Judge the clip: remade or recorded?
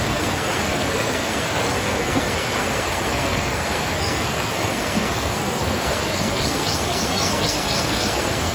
remade